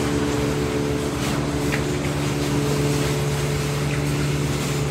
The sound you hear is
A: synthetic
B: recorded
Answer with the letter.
B